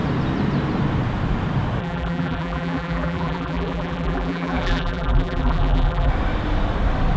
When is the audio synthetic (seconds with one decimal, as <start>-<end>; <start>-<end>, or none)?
1.8-6.1